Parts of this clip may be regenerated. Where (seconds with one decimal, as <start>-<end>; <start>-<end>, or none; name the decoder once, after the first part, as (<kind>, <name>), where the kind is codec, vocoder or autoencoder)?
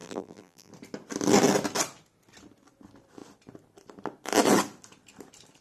0.0-0.7 (vocoder, BigVGAN v2)